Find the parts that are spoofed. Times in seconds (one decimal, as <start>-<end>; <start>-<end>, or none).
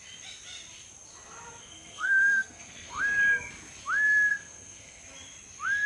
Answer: 1.6-3.0; 4.3-5.0